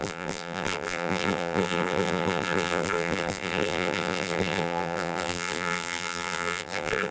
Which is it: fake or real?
fake